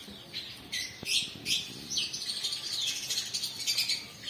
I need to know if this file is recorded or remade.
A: recorded